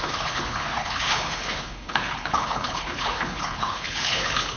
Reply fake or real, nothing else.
fake